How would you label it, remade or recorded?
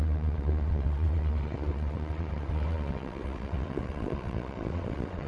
remade